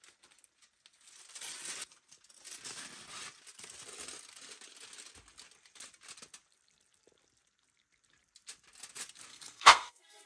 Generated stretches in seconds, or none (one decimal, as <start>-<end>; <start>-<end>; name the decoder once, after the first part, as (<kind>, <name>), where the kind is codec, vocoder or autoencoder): 9.3-10.3 (codec, SNAC)